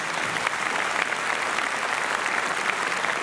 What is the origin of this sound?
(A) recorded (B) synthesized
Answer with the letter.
A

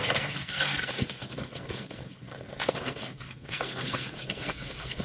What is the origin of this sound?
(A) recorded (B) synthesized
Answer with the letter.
B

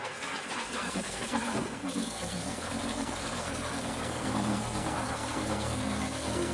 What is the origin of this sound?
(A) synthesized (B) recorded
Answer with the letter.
A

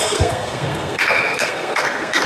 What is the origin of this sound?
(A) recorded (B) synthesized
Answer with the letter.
B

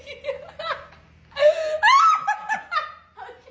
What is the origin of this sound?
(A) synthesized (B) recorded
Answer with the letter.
B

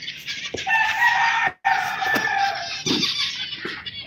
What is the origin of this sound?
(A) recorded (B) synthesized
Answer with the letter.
A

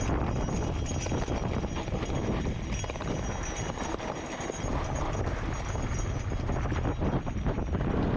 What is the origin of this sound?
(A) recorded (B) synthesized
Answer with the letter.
A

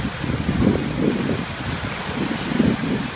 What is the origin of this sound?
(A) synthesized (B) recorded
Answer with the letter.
B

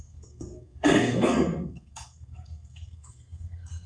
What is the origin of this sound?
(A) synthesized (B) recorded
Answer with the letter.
A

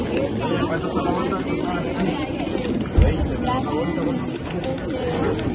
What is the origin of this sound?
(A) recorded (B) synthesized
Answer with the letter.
A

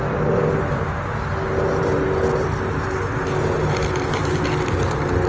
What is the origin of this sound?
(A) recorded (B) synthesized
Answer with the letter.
A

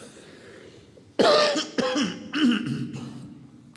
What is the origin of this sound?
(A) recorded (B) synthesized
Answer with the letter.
A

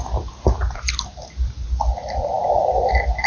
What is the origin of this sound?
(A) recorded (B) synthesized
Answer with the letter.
A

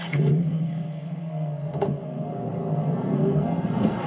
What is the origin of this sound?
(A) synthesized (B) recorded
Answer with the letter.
A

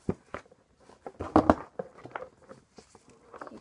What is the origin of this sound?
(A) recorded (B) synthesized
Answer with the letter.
A